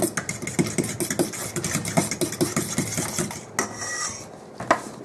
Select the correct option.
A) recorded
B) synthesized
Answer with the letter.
A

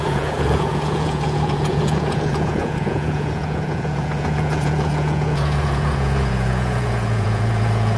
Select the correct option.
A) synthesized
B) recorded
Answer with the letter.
A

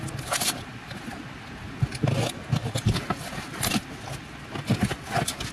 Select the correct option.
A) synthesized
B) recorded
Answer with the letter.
B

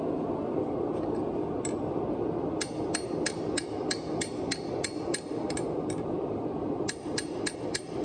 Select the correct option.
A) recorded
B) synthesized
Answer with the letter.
A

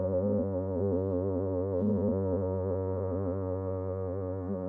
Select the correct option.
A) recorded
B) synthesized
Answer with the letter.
B